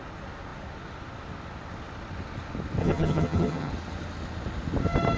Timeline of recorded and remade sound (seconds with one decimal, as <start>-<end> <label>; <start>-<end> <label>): 0.0-2.8 recorded; 2.8-3.7 remade; 3.7-5.2 recorded